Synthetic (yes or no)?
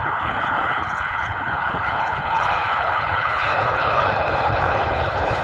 yes